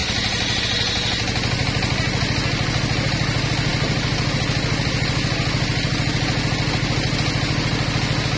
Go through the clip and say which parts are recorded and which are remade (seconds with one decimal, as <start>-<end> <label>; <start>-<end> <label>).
0.0-8.4 recorded